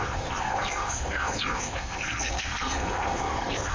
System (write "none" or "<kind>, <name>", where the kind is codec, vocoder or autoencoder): codec, SNAC